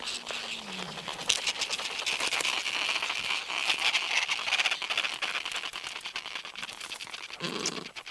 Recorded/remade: recorded